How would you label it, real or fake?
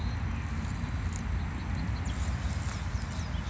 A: real